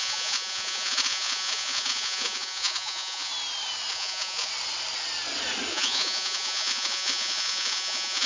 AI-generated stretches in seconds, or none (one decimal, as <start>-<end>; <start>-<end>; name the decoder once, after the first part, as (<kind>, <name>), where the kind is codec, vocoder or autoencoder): 0.0-3.3 (vocoder, Vocos); 3.9-4.5; 5.7-8.3